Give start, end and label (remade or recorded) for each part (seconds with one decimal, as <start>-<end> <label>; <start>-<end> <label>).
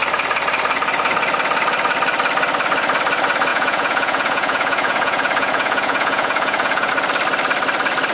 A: 0.0-3.5 recorded; 3.5-6.9 remade; 6.9-8.1 recorded